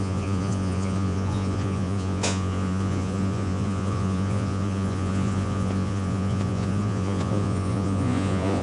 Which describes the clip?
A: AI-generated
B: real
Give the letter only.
A